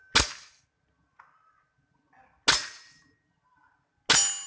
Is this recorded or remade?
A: recorded